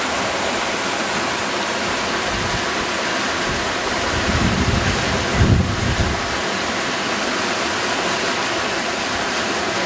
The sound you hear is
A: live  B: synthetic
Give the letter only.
A